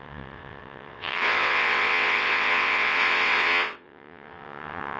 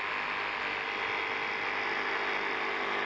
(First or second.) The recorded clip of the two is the second